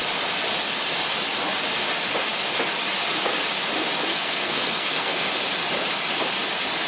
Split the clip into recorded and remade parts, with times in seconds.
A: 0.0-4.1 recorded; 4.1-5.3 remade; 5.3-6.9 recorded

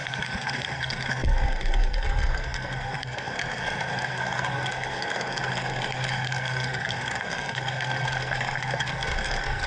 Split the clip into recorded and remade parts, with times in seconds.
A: 0.0-9.7 remade

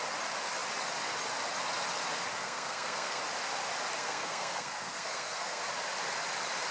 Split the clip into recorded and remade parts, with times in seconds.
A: 0.0-2.4 recorded; 2.4-3.2 remade; 3.2-4.0 recorded; 4.0-5.6 remade; 5.6-6.7 recorded

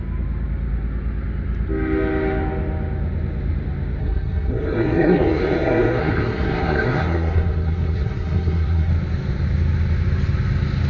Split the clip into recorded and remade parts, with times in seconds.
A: 0.0-4.0 recorded; 4.0-8.9 remade; 8.9-10.9 recorded